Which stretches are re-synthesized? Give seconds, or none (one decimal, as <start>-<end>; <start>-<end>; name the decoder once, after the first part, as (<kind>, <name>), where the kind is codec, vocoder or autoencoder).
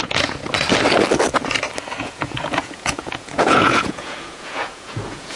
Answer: 0.0-0.4 (vocoder, Vocos); 2.0-5.4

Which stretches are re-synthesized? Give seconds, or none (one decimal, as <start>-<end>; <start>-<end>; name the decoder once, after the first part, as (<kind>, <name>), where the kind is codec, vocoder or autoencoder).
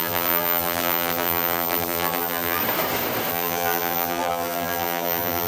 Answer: 0.0-2.6 (vocoder, BigVGAN v2); 3.3-5.5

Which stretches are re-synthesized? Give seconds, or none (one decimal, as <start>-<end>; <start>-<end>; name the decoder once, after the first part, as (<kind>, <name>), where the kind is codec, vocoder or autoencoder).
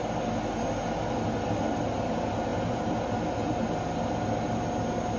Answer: none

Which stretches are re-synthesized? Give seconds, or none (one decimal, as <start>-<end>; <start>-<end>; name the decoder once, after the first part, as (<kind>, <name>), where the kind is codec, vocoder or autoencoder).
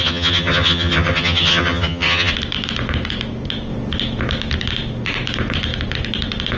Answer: 0.0-2.3 (vocoder, HiFi-GAN)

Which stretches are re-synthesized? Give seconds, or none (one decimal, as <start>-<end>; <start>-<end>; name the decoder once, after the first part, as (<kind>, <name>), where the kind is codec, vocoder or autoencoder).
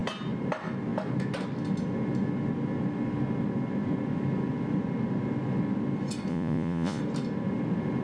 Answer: 6.3-7.0 (vocoder, Vocos)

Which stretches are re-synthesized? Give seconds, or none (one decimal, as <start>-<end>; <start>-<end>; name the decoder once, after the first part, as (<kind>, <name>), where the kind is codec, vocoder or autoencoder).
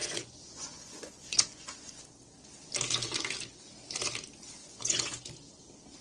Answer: 0.0-2.0 (vocoder, Vocos); 4.6-5.2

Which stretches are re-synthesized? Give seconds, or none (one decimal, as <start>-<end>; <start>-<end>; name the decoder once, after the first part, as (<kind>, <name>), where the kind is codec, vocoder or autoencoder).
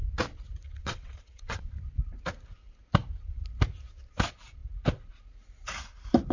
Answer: 0.8-1.7 (vocoder, WaveNeXt)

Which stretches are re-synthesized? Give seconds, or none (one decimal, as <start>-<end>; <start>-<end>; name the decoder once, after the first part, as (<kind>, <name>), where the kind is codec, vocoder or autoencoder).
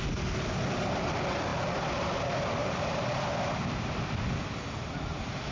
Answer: 2.6-3.3 (vocoder, BigVGAN v2)